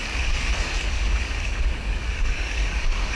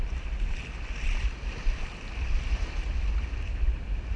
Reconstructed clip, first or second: first